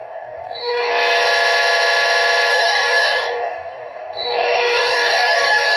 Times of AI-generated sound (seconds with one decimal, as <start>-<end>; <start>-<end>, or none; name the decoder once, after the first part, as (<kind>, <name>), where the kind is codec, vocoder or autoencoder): 0.0-0.9 (codec, DAC); 2.5-5.8